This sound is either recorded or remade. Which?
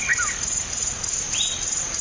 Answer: recorded